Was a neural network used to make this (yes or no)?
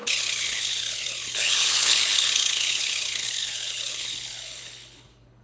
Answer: yes